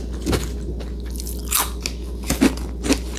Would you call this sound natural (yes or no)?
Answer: yes